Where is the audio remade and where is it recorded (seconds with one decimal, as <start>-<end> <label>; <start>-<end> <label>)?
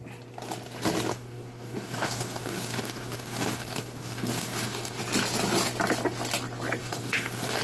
0.0-1.1 recorded; 1.1-5.0 remade; 5.0-6.8 recorded; 6.8-7.6 remade